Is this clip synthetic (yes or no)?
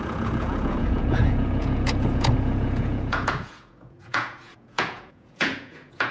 yes